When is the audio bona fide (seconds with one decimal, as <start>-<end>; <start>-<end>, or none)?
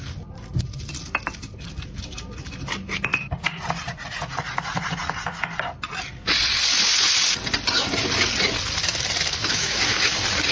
0.0-9.4; 10.0-10.5